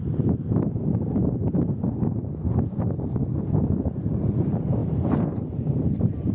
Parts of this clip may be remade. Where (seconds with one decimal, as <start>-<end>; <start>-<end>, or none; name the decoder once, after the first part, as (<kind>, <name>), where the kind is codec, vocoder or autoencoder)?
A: 4.8-6.3 (vocoder, BigVGAN v2)

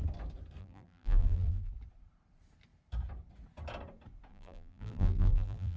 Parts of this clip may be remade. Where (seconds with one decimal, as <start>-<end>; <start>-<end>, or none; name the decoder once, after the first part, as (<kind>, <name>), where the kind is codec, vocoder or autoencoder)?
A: 0.6-1.7 (vocoder, BigVGAN v2); 4.3-5.8

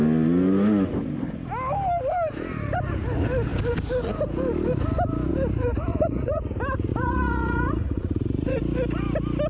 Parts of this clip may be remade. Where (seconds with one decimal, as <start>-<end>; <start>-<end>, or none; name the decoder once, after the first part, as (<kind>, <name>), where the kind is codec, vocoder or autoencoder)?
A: 5.9-6.4 (vocoder, Vocos); 6.9-8.6

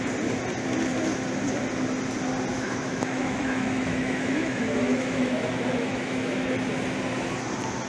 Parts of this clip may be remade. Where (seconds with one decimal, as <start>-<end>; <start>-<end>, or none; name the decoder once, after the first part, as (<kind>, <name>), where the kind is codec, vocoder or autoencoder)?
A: 2.5-6.5 (autoencoder, DAC-VAE)

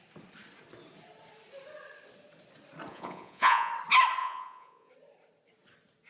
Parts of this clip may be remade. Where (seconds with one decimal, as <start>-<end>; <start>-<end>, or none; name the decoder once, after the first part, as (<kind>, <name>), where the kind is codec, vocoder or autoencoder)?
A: 2.9-3.7 (vocoder, Vocos); 4.2-4.9

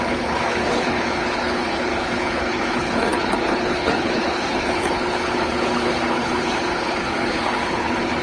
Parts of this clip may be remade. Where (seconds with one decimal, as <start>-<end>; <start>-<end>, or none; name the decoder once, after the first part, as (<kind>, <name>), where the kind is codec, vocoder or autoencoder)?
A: 0.0-8.2 (codec, HILCodec)

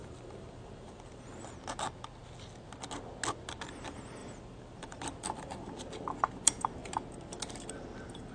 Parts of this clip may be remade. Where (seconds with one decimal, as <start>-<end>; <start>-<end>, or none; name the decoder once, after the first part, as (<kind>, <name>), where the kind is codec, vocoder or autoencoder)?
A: 0.0-1.5 (vocoder, BigVGAN v2); 4.2-5.7

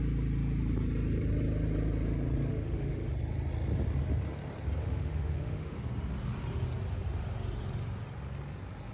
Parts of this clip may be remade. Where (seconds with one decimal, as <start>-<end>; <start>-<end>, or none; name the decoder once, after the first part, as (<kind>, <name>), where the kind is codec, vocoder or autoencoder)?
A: 2.5-3.1 (autoencoder, DAC-VAE); 4.8-5.8